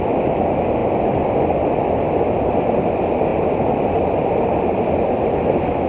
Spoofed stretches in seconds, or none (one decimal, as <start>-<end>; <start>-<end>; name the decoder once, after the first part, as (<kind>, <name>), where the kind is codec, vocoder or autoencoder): none